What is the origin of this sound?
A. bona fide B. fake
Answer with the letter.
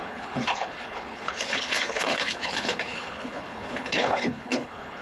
B